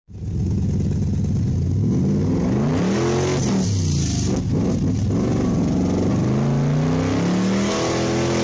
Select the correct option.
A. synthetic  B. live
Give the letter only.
B